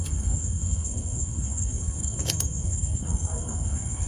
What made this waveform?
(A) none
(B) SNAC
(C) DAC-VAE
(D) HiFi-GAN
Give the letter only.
B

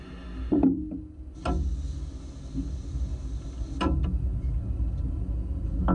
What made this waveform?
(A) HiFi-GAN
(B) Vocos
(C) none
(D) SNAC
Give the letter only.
C